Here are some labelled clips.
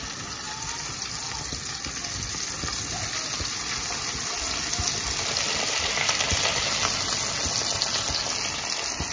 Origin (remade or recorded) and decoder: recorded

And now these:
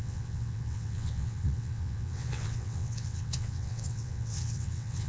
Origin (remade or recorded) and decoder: remade, vocoder, WaveNeXt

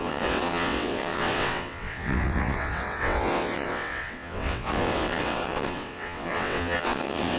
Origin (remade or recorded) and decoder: remade, vocoder, WaveNeXt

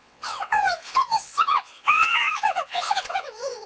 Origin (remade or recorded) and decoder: remade, vocoder, WaveNeXt